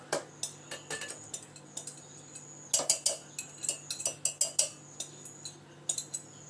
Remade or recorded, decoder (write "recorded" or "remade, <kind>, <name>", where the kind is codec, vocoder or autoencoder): recorded